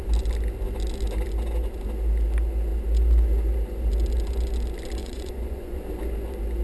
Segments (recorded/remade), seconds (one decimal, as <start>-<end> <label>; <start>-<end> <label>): 0.0-5.0 recorded; 5.0-5.8 remade; 5.8-6.6 recorded